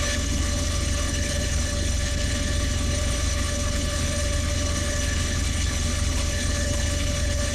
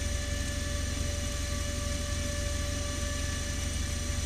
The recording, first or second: second